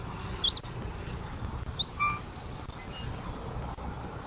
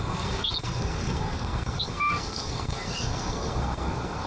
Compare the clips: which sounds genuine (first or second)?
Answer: first